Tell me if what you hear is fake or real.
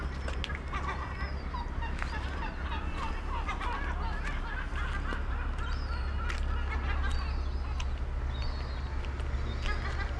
real